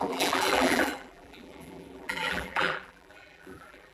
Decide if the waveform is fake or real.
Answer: fake